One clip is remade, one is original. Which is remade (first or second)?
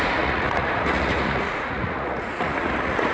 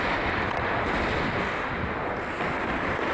first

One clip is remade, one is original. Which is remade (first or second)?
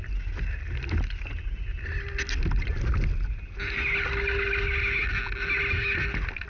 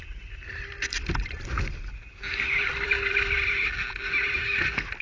second